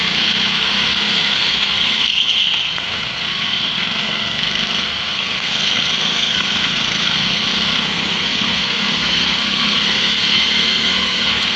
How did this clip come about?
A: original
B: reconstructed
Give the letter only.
B